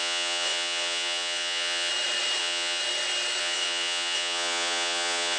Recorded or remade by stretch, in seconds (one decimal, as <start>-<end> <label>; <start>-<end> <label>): 0.0-1.9 remade; 1.9-2.4 recorded; 2.4-2.8 remade; 2.8-3.4 recorded; 3.4-5.4 remade